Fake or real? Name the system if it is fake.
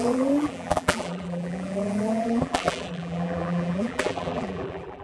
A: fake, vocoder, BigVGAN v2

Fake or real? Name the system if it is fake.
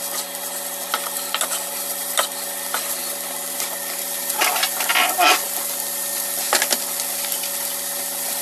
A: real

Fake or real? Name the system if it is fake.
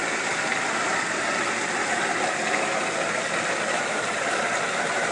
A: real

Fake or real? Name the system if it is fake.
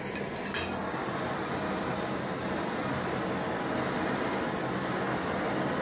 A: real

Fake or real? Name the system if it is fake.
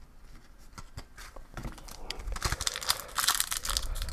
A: real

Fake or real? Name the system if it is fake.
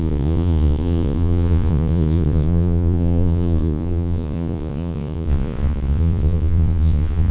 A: fake, vocoder, Vocos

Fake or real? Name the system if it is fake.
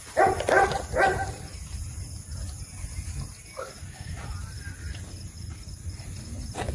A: real